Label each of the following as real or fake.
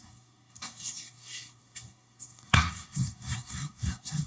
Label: fake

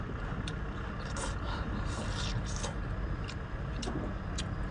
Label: real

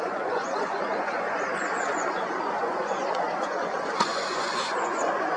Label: fake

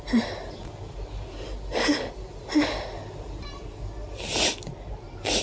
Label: real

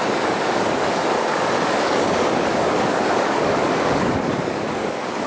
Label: fake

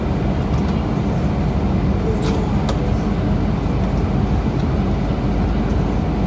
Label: real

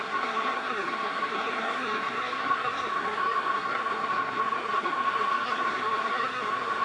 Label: fake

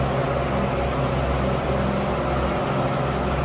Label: real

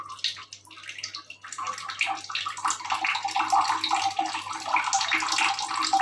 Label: real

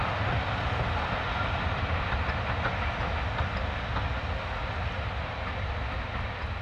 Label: real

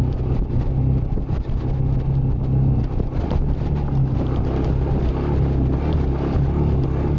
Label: real